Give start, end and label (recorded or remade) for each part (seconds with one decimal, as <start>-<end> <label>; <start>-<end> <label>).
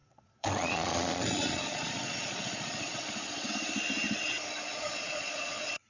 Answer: 0.0-3.5 remade; 3.5-4.7 recorded; 4.7-5.9 remade